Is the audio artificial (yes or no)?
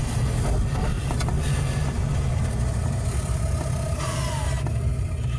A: no